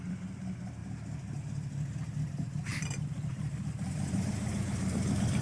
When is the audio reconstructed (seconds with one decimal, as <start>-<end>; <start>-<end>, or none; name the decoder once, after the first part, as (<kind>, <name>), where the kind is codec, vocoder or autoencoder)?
0.0-0.8 (vocoder, BigVGAN v2); 2.3-5.4